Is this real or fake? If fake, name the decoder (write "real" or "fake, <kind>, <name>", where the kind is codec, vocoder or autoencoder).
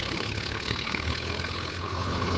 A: fake, codec, HILCodec